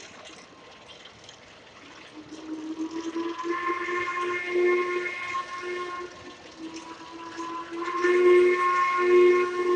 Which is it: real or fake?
real